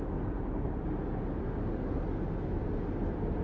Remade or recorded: recorded